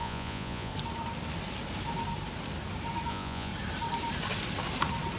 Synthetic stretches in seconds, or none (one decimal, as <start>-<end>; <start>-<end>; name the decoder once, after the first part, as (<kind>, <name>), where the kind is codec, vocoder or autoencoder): 0.0-0.7 (vocoder, Vocos); 3.1-3.5